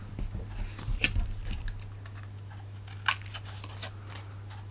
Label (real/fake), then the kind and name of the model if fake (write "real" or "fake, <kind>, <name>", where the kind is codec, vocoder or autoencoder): real